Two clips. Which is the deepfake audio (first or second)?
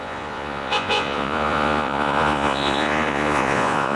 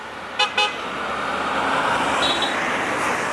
first